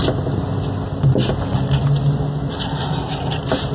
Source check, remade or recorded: recorded